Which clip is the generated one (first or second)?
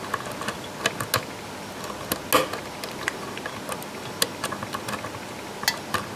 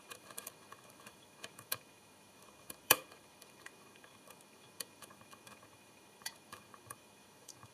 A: second